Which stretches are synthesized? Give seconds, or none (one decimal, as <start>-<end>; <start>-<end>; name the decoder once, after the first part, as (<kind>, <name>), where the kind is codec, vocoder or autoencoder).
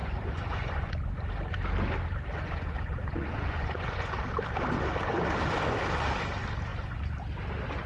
0.0-0.9 (vocoder, Vocos); 2.3-4.2